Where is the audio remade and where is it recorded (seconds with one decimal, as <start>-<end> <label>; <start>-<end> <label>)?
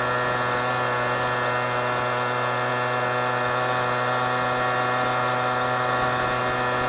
0.0-6.9 recorded